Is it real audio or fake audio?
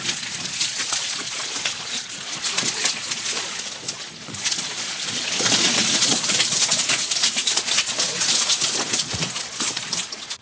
fake